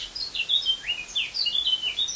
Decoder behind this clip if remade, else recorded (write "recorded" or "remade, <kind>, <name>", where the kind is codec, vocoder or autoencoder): recorded